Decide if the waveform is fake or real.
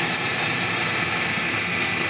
real